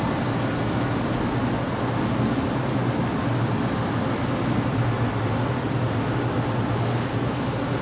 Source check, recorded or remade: recorded